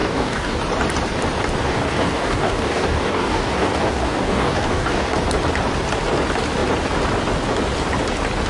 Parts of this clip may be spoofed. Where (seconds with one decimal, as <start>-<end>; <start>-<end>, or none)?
0.0-0.6; 1.6-5.1